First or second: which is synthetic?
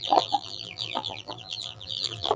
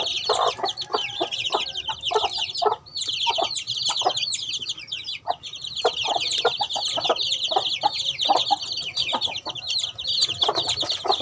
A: first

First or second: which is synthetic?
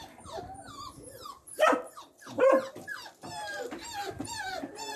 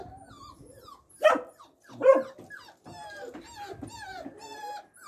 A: first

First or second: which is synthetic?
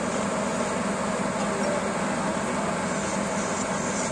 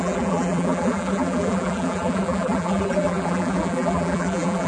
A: second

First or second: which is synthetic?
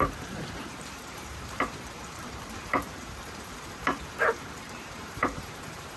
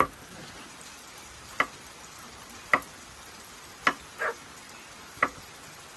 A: first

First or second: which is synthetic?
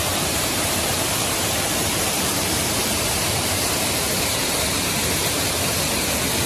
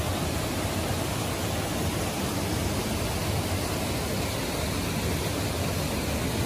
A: first